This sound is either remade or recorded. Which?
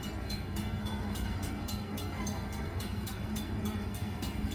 remade